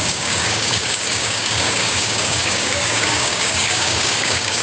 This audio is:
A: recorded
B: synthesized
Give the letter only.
B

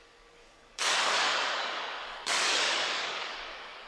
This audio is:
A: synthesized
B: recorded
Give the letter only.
A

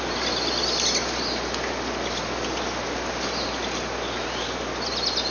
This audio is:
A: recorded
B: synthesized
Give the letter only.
A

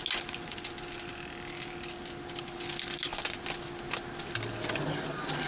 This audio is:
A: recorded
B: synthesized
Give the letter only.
A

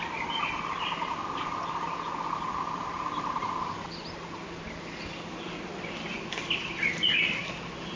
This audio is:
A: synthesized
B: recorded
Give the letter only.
B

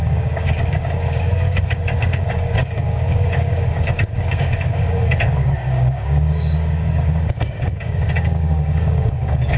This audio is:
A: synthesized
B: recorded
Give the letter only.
A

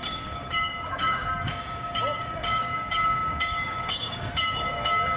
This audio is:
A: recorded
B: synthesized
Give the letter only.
B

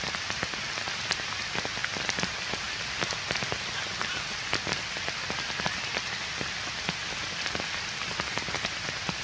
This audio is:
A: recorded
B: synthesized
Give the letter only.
A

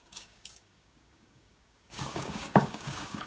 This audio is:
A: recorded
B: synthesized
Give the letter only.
B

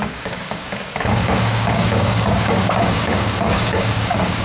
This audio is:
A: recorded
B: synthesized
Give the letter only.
B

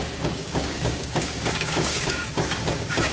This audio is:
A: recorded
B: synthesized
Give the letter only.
B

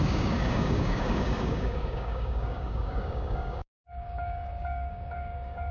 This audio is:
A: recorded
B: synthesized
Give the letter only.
B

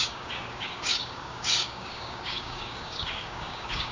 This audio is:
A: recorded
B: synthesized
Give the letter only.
B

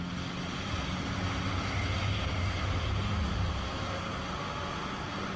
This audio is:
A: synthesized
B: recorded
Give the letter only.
B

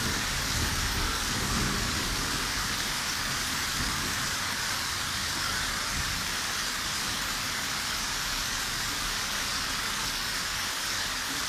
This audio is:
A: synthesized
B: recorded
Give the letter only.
A